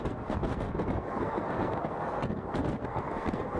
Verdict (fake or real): fake